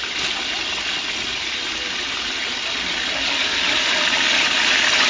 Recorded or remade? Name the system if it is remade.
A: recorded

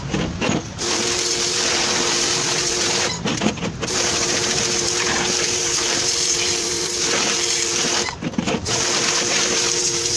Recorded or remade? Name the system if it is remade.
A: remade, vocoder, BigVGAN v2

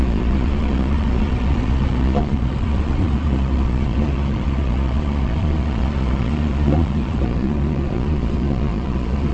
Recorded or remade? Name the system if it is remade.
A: remade, vocoder, Vocos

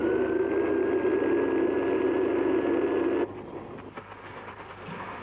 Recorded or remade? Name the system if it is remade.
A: recorded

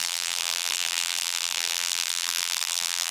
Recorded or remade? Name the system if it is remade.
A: remade, vocoder, BigVGAN v2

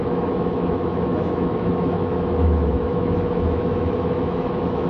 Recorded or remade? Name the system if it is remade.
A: remade, autoencoder, DAC-VAE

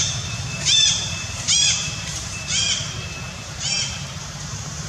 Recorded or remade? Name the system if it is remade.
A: remade, vocoder, BigVGAN v2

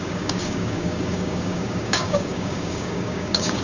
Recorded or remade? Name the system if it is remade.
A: remade, codec, DAC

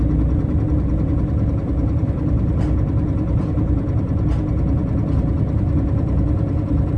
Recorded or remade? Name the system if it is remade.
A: recorded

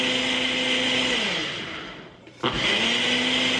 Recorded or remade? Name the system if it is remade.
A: recorded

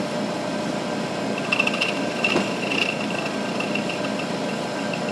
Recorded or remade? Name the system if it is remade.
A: recorded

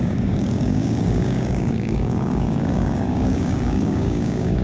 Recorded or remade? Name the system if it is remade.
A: remade, codec, DAC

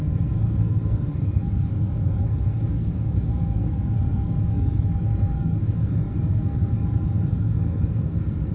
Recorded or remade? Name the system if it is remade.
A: remade, codec, SNAC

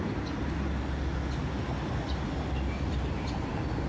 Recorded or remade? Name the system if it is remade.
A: recorded